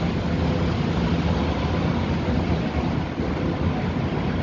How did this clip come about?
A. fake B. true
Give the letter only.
B